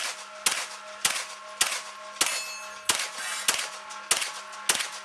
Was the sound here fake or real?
real